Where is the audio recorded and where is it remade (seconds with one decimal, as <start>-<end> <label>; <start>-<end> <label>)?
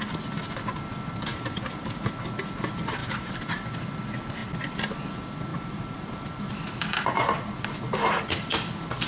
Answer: 0.0-1.3 recorded; 1.3-2.0 remade; 2.0-3.0 recorded; 3.0-3.6 remade; 3.6-5.5 recorded; 5.5-6.5 remade; 6.5-9.1 recorded